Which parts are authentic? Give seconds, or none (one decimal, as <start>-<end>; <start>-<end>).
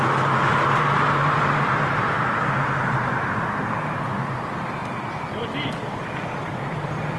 1.8-2.7; 4.8-5.4